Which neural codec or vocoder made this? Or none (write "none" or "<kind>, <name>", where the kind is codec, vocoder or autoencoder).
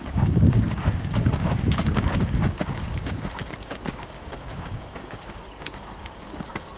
codec, DAC